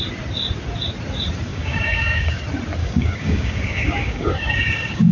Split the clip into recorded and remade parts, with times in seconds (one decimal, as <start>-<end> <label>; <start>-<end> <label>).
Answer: 0.0-1.5 recorded; 1.5-2.4 remade; 2.4-2.8 recorded; 2.8-5.1 remade